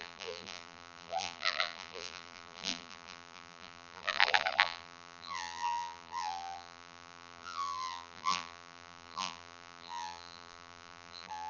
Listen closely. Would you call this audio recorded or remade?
remade